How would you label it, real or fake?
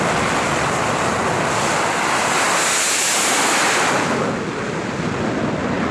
real